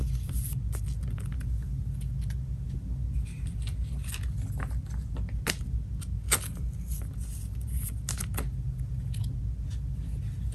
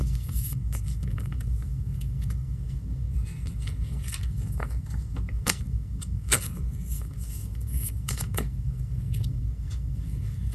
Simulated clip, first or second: second